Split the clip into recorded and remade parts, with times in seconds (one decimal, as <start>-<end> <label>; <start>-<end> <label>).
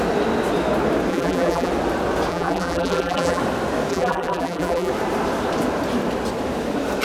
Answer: 0.0-1.1 recorded; 1.1-1.7 remade; 1.7-2.3 recorded; 2.3-3.4 remade; 3.4-3.9 recorded; 3.9-4.9 remade; 4.9-7.0 recorded